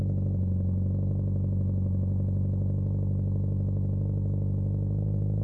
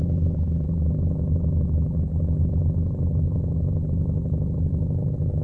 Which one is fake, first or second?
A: second